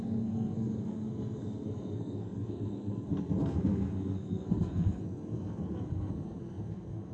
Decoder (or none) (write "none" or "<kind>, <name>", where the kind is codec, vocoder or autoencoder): codec, SNAC